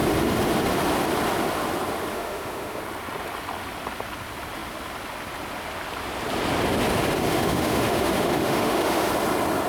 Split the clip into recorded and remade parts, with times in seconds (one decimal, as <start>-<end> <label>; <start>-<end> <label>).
0.0-2.1 recorded; 2.1-2.8 remade; 2.8-7.3 recorded; 7.3-9.1 remade; 9.1-9.7 recorded